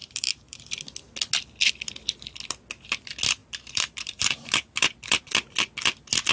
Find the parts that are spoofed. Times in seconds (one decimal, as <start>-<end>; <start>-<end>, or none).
0.0-0.6; 3.4-5.2